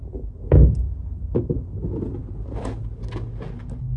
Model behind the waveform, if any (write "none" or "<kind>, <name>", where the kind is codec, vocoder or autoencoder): none